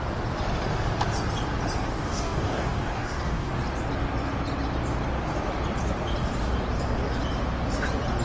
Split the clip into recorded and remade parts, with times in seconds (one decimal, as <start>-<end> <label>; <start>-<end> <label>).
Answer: 0.0-1.9 recorded; 1.9-3.5 remade; 3.5-8.2 recorded